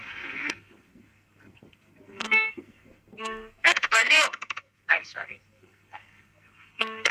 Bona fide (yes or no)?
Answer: no